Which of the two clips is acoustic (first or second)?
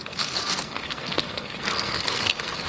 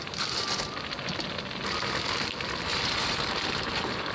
second